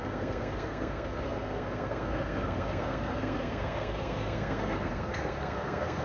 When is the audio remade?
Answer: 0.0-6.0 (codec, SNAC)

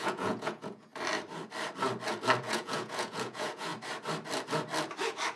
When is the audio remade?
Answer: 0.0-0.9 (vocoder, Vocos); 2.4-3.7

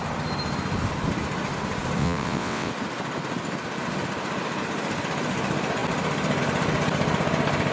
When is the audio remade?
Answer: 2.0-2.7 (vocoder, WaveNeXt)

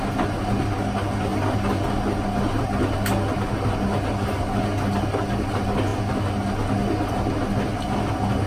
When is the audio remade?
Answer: none

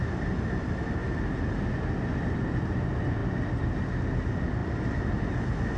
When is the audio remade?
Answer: none

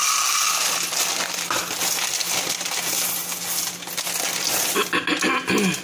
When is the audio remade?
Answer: none

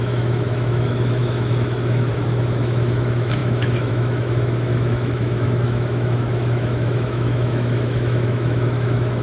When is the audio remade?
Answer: 0.0-9.2 (autoencoder, DAC-VAE)

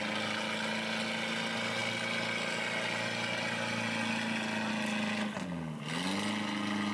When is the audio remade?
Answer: none